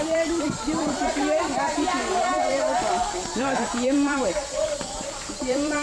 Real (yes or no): no